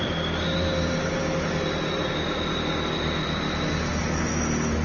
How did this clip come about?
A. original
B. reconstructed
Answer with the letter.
A